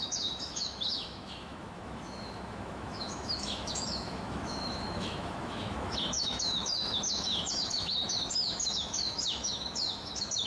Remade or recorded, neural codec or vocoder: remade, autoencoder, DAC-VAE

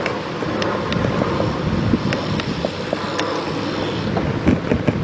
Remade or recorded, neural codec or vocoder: recorded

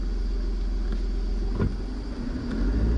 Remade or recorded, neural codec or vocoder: recorded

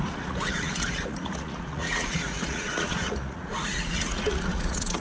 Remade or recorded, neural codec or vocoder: remade, vocoder, Vocos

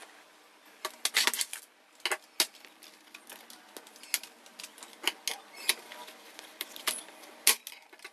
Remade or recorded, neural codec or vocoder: recorded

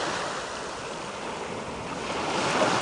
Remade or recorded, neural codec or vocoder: recorded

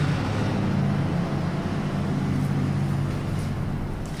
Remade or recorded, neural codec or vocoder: recorded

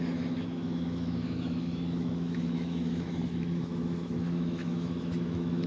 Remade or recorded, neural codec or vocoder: remade, autoencoder, DAC-VAE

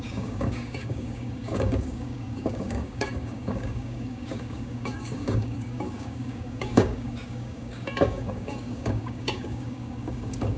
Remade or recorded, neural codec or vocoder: remade, codec, DAC